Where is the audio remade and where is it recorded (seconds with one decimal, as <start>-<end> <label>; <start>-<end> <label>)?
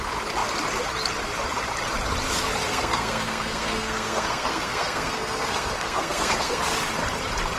0.0-2.7 recorded; 2.7-6.6 remade; 6.6-7.6 recorded